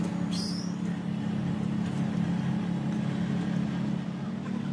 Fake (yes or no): no